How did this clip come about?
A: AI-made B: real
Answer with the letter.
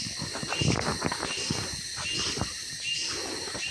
B